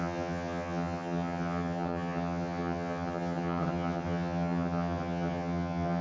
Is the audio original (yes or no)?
no